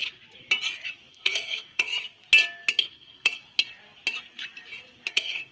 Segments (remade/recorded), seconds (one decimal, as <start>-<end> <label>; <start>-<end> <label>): 0.0-1.1 recorded; 1.1-1.9 remade; 1.9-2.8 recorded; 2.8-3.4 remade; 3.4-5.1 recorded; 5.1-5.5 remade